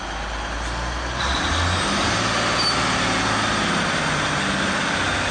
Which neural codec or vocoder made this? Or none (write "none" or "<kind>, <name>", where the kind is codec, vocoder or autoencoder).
none